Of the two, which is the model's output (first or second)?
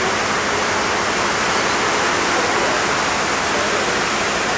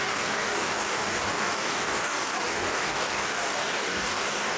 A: second